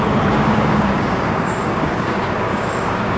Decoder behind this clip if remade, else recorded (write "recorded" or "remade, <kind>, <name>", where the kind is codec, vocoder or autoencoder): remade, codec, DAC